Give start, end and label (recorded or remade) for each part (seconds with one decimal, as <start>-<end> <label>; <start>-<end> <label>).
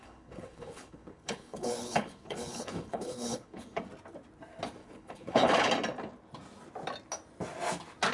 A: 0.0-3.8 remade; 3.8-4.8 recorded; 4.8-5.7 remade; 5.7-8.1 recorded